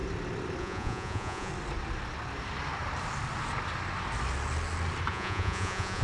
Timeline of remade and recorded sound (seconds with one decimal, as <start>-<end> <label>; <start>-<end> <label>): 0.0-0.6 recorded; 0.6-1.5 remade; 1.5-5.1 recorded; 5.1-6.0 remade